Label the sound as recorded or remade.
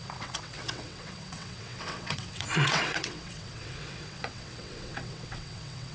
remade